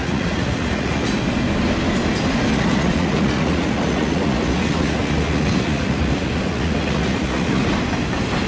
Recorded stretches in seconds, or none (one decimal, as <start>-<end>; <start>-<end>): 1.2-2.5; 7.6-8.5